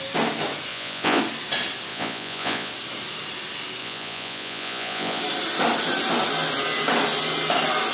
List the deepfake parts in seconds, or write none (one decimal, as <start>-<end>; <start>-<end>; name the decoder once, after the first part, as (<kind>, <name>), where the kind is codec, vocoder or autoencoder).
0.7-1.2 (vocoder, Vocos); 1.9-2.7; 3.8-5.2